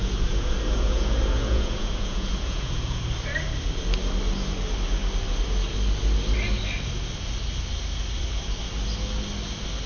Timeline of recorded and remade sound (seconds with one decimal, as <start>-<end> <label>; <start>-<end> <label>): 0.0-3.0 remade; 3.0-9.9 recorded